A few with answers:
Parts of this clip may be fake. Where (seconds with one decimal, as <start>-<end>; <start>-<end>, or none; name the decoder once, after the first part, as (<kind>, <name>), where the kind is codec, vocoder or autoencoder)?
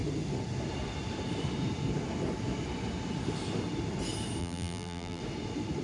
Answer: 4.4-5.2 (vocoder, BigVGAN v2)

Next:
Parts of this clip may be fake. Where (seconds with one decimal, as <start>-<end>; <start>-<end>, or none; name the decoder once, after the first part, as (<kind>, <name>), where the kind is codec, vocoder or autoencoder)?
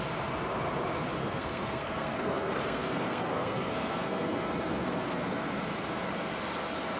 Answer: 1.2-5.4 (codec, SNAC)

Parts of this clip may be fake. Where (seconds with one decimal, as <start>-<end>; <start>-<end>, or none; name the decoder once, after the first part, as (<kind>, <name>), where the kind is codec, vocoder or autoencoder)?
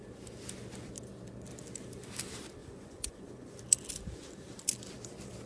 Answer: 2.6-3.6 (vocoder, Vocos)